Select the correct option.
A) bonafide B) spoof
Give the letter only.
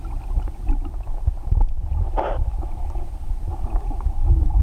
A